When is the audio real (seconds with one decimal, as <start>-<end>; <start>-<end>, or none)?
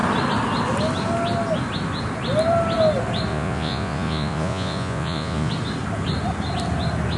0.0-3.3; 5.5-7.2